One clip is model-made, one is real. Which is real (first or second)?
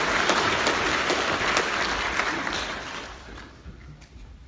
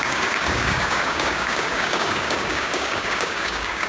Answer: first